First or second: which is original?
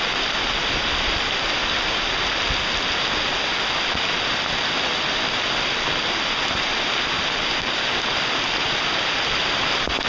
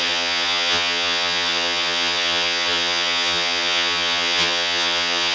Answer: first